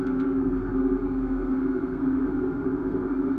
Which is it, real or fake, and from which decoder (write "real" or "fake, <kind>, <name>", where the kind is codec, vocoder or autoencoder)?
fake, codec, SNAC